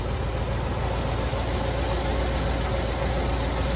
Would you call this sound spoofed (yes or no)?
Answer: no